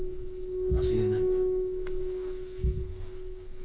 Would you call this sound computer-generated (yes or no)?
yes